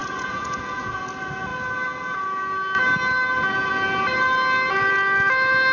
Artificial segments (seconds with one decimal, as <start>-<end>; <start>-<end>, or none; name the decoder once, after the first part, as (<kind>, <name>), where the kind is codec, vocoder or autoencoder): 0.0-1.1 (vocoder, Vocos)